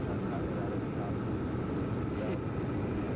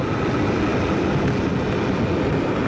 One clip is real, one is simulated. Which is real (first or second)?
first